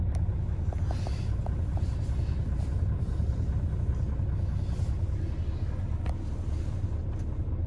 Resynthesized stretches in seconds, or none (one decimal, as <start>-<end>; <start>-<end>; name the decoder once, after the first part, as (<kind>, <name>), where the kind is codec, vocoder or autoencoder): 3.1-4.1 (vocoder, BigVGAN v2)

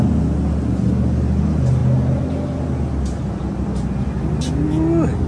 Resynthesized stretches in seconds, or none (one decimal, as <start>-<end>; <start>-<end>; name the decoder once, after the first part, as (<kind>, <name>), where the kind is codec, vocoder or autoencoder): none